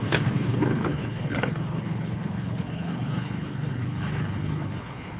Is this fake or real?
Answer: fake